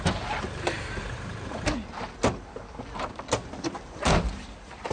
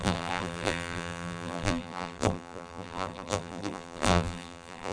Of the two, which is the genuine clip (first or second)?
first